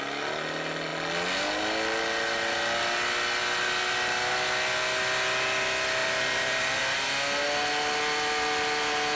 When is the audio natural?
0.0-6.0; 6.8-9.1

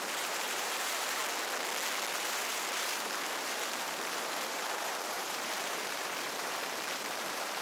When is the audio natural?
1.2-2.1

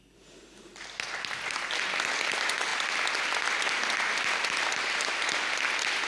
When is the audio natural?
0.0-6.1

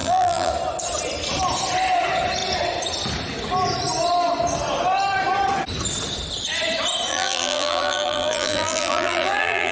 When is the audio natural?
0.5-7.1

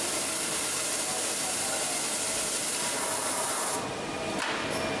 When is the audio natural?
0.0-5.0

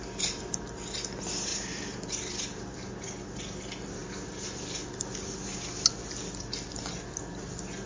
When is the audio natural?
0.0-7.9